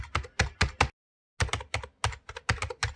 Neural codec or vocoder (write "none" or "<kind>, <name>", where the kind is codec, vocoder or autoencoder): none